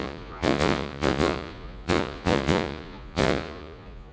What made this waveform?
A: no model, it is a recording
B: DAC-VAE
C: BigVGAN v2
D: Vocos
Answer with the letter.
D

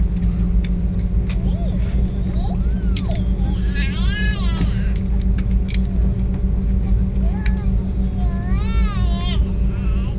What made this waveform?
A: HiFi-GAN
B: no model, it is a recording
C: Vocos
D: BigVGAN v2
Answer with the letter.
B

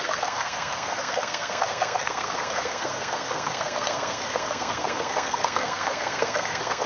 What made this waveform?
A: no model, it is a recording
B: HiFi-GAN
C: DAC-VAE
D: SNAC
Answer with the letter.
D